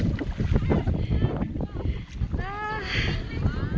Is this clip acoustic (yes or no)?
yes